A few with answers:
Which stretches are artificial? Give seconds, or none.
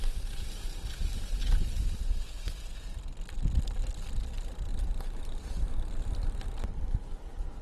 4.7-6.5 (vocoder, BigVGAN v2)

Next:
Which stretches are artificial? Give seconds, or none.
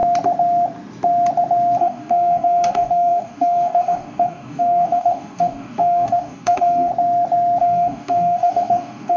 1.8-6.9 (codec, DAC); 7.6-9.2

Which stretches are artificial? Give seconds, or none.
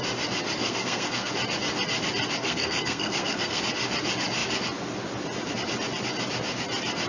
0.6-1.3 (codec, SNAC); 2.4-3.6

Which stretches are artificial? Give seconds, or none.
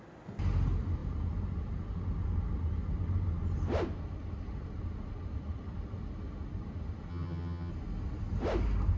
7.1-7.7 (vocoder, HiFi-GAN)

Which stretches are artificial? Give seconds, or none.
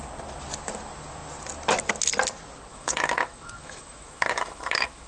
2.7-5.1 (autoencoder, DAC-VAE)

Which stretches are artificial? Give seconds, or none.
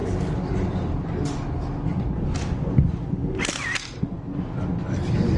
none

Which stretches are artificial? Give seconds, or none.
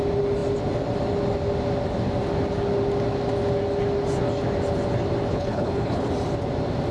5.3-6.1 (codec, HILCodec)